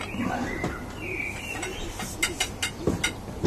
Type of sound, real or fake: real